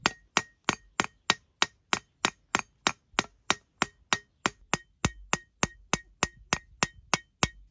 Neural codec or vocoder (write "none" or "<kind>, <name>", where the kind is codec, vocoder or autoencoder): none